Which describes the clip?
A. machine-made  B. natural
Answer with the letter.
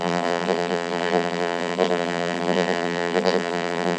A